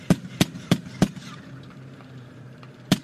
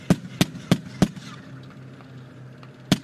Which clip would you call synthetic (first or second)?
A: first